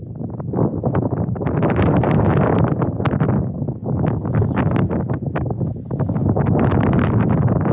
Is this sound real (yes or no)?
yes